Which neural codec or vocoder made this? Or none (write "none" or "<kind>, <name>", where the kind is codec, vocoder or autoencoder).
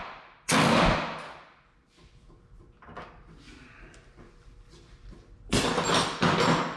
none